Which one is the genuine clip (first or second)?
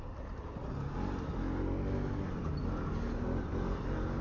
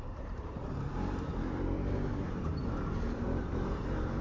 first